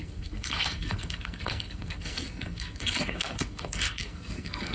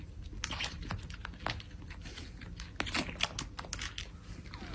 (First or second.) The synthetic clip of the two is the first